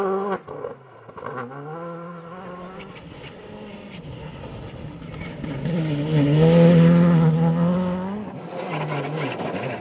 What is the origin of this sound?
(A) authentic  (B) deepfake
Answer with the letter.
A